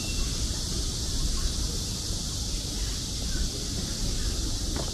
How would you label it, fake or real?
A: real